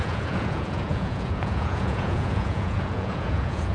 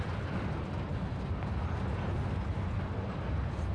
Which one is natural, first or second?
second